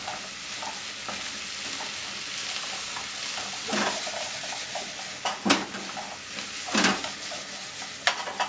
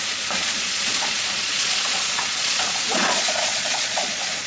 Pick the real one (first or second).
first